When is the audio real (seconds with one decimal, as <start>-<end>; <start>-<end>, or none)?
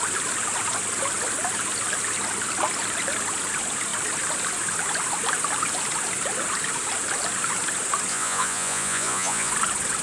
0.0-8.1; 9.5-10.0